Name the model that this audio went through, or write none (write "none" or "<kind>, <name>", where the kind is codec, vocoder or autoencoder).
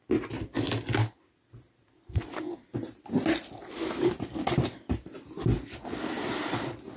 none